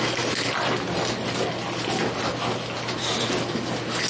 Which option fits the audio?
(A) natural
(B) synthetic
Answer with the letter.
A